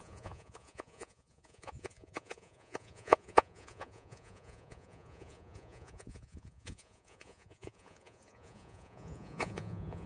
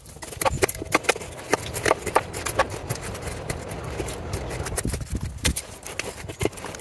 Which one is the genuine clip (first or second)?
second